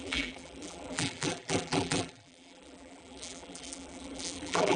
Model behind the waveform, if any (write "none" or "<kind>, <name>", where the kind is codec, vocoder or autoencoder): vocoder, BigVGAN v2